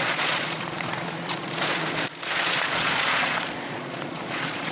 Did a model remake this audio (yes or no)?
yes